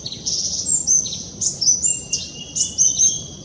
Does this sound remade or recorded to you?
recorded